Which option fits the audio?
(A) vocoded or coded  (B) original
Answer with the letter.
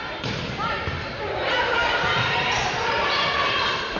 A